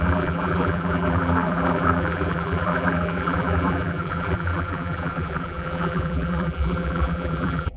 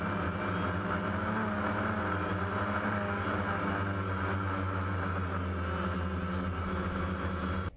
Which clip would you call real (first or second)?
second